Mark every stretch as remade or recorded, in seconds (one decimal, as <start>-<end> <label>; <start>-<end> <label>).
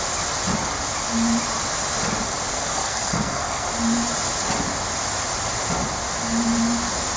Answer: 0.0-2.5 recorded; 2.5-3.7 remade; 3.7-7.2 recorded